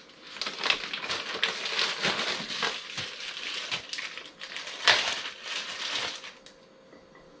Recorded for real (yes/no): yes